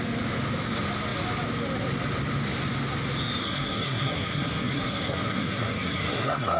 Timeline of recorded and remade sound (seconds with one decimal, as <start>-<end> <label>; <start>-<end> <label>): 0.0-3.4 recorded; 3.4-6.6 remade